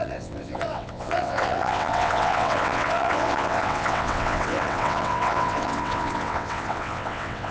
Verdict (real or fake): fake